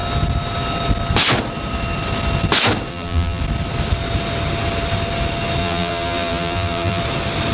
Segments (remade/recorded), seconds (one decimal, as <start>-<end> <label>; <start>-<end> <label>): 0.0-2.9 recorded; 2.9-3.4 remade; 3.4-5.6 recorded; 5.6-7.0 remade; 7.0-7.5 recorded